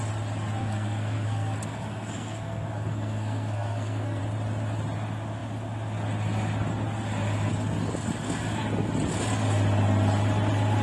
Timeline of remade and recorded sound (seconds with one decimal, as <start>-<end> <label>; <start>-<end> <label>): 0.0-0.6 recorded; 0.6-4.2 remade; 4.2-10.8 recorded